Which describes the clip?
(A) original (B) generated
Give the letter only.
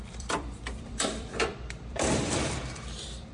B